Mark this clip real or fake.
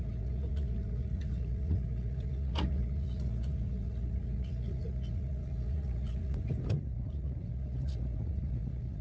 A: fake